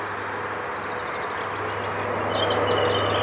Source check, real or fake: real